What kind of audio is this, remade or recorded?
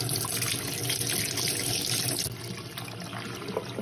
recorded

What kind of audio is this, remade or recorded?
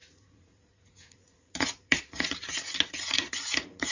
remade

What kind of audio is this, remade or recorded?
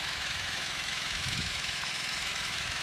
remade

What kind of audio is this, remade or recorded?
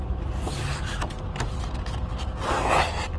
recorded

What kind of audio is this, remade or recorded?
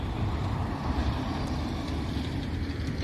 recorded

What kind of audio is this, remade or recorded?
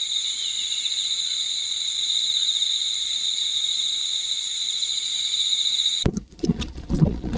remade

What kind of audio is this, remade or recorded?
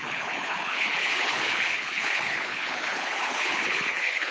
remade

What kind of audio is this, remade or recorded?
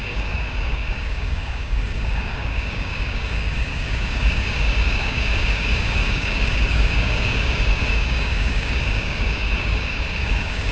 remade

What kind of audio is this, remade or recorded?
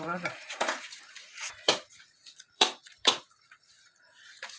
remade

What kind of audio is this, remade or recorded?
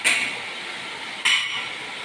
recorded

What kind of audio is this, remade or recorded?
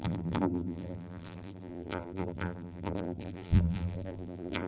remade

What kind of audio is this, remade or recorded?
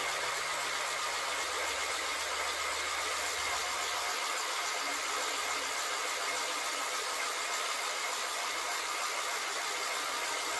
recorded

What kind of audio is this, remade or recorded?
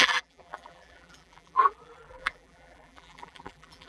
remade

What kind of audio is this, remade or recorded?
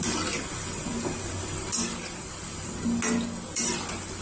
recorded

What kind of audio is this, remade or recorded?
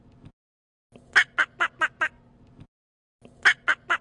recorded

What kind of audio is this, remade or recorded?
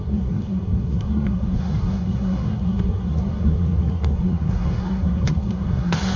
remade